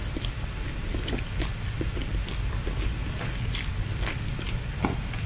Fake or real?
real